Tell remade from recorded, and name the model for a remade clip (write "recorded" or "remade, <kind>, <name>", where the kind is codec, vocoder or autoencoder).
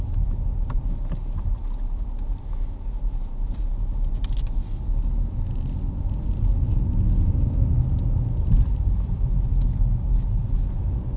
recorded